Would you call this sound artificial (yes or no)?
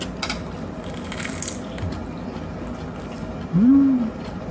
no